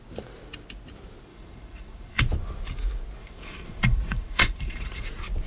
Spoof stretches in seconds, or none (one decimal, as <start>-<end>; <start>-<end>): 1.3-2.2; 3.2-5.0